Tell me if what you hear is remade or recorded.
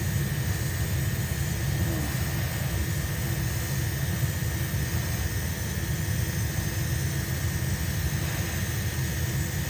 recorded